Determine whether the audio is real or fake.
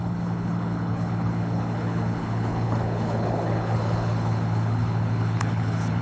fake